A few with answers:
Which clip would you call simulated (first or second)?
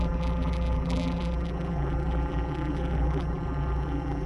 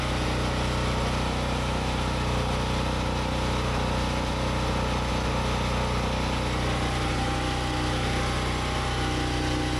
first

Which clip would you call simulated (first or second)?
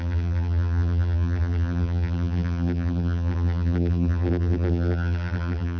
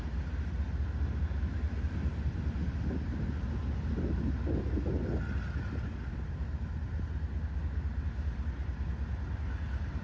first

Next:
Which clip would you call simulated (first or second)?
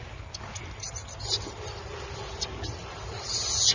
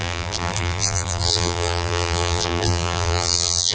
second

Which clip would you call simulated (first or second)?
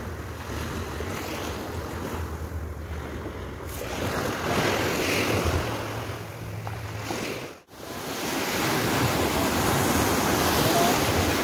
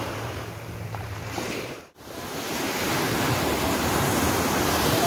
second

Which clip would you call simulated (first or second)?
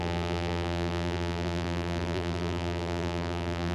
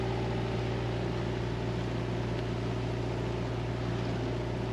first